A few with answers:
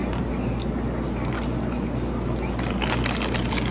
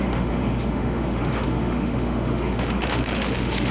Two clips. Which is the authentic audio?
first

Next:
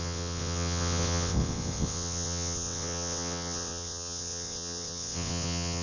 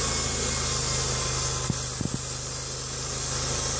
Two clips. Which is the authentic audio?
second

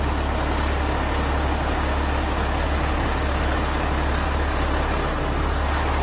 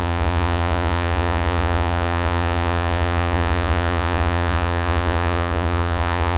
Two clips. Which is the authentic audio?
first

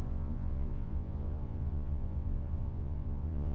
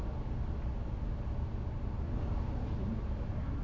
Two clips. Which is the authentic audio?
second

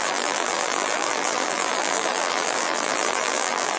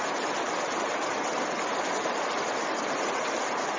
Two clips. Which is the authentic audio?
second